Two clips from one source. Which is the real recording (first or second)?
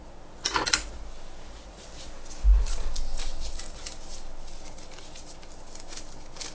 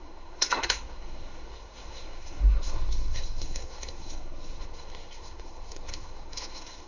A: first